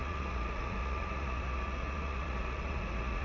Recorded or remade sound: remade